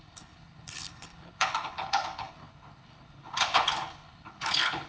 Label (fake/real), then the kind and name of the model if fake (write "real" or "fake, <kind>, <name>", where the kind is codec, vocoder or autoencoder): fake, codec, HILCodec